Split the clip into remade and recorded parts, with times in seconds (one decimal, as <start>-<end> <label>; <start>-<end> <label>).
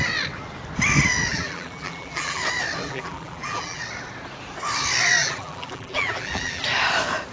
0.0-1.3 recorded; 1.3-2.4 remade; 2.4-2.8 recorded; 2.8-3.8 remade; 3.8-5.2 recorded; 5.2-6.6 remade; 6.6-7.3 recorded